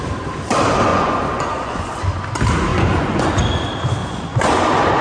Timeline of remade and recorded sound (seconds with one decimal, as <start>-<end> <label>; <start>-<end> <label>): 0.0-0.9 recorded; 0.9-2.0 remade; 2.0-2.7 recorded; 2.7-3.3 remade; 3.3-4.0 recorded; 4.0-5.0 remade